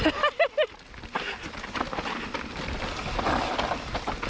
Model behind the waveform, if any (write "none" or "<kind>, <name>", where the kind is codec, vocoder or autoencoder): none